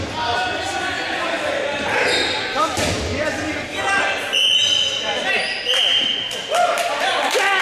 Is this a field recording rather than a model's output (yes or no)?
yes